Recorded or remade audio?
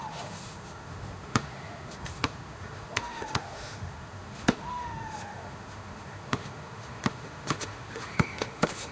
remade